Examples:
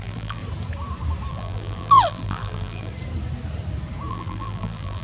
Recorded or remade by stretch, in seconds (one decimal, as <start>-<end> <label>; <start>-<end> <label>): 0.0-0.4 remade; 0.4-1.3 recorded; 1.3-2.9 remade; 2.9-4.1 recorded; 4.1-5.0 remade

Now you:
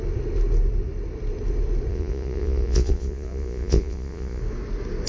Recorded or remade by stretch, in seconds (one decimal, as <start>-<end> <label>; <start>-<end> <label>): 0.0-1.9 recorded; 1.9-4.4 remade; 4.4-5.1 recorded

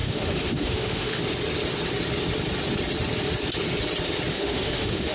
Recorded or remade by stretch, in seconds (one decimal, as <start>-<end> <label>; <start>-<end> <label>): 0.0-1.2 remade; 1.2-4.3 recorded; 4.3-5.1 remade